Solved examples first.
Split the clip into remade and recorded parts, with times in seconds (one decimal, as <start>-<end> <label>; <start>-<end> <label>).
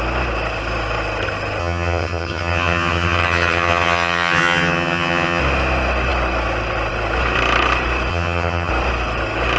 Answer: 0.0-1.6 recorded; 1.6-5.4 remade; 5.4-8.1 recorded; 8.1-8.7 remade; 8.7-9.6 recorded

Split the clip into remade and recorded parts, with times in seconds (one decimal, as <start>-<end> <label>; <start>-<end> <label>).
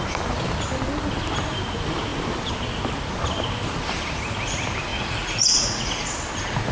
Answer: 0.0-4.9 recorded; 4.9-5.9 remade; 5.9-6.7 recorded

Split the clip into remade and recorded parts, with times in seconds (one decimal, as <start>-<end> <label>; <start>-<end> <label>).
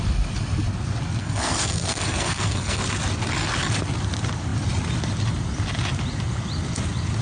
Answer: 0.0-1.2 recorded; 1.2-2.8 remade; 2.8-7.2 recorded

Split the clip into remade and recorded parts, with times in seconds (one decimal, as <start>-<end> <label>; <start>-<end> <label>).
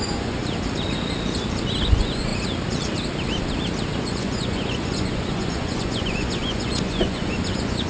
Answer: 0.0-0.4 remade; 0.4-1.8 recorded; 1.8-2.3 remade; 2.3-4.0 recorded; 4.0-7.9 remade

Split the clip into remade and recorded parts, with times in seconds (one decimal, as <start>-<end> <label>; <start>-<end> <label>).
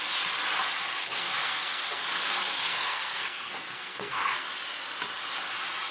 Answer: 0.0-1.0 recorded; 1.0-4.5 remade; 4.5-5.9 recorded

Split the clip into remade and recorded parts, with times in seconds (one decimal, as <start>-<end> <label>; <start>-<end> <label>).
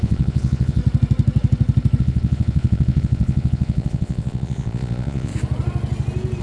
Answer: 0.0-0.8 remade; 0.8-2.0 recorded; 2.0-5.3 remade; 5.3-6.4 recorded